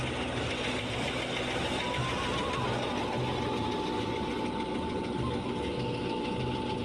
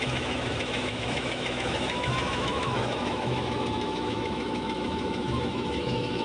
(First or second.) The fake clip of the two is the second